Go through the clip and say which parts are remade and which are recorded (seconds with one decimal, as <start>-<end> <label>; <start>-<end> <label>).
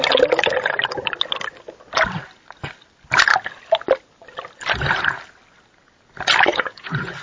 0.0-6.5 recorded; 6.5-7.2 remade